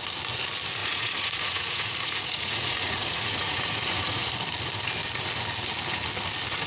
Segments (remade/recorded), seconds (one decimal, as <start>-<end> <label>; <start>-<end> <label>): 0.0-0.8 recorded; 0.8-4.3 remade; 4.3-6.7 recorded